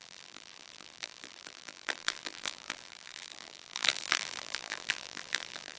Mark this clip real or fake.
fake